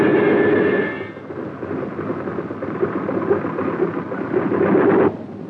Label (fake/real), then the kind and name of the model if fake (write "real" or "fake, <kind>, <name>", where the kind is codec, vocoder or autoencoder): real